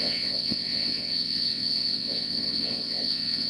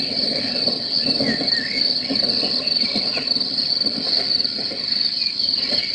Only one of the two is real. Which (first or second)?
second